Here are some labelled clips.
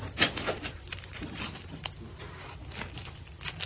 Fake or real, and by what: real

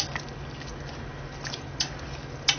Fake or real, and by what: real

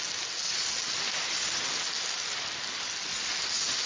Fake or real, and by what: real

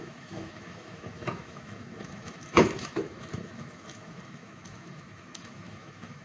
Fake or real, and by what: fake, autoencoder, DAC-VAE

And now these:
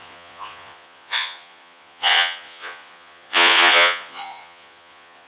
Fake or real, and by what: fake, vocoder, Vocos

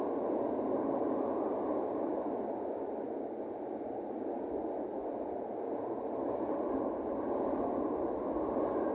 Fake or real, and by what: real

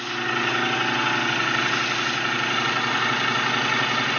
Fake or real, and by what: real